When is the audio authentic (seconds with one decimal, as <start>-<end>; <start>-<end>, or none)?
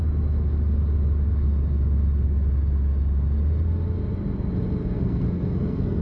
0.0-4.8